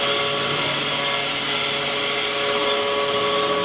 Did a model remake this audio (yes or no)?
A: no